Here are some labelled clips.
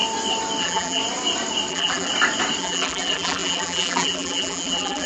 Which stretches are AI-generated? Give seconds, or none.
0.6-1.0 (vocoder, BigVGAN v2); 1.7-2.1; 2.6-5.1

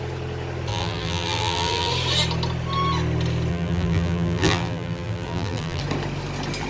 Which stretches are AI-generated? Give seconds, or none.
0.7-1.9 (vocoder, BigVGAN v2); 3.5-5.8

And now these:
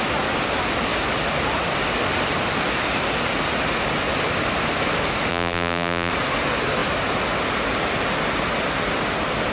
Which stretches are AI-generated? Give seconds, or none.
5.3-6.1 (vocoder, BigVGAN v2)

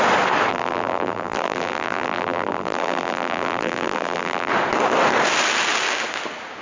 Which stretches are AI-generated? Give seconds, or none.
0.5-4.5 (vocoder, BigVGAN v2)

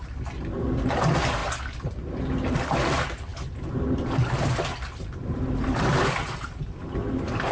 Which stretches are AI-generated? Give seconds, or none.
none